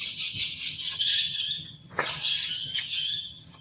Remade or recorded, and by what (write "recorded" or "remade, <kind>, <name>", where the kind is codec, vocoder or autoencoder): remade, vocoder, HiFi-GAN